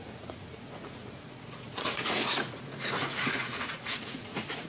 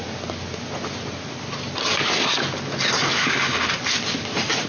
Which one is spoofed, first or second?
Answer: first